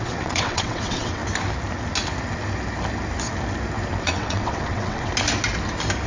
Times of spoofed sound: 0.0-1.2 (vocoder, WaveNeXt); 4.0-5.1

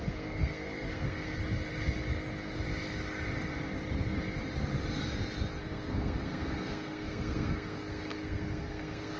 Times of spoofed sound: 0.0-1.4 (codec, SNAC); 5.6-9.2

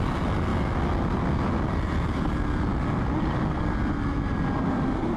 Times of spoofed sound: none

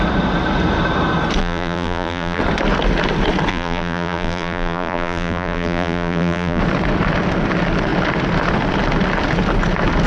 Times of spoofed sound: 1.4-2.4 (vocoder, BigVGAN v2); 3.5-6.6

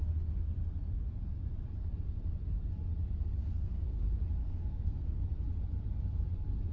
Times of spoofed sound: 3.4-4.0 (codec, SNAC); 4.4-5.1